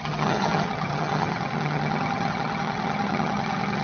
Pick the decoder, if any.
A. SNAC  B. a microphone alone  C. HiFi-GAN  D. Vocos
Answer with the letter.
C